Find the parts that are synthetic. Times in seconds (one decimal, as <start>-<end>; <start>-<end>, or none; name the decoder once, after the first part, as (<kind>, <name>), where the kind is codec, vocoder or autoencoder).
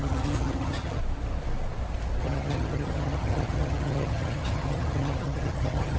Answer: 0.0-1.0 (vocoder, HiFi-GAN); 2.2-6.0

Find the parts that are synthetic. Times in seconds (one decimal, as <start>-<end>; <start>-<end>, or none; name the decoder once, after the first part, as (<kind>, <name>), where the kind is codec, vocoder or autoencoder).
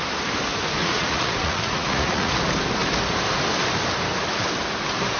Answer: 0.8-2.3 (vocoder, Vocos)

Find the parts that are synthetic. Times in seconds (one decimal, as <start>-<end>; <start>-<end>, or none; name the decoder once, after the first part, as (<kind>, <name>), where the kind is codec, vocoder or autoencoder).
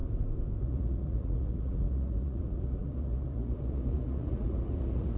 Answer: 0.6-5.2 (vocoder, Vocos)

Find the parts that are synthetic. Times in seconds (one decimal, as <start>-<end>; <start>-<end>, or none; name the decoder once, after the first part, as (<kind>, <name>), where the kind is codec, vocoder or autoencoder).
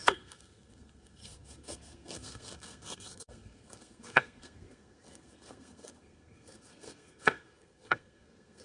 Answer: 0.0-8.6 (codec, SNAC)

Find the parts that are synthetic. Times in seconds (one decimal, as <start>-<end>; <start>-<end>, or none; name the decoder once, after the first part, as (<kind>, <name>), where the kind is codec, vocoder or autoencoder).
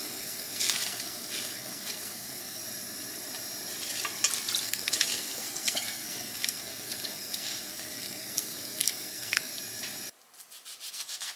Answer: 0.0-2.6 (codec, SNAC); 4.6-9.5; 10.9-11.4